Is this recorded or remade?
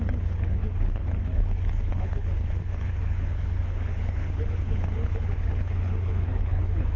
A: remade